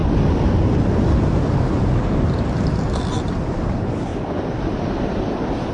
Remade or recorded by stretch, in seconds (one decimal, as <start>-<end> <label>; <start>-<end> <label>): 0.0-5.7 recorded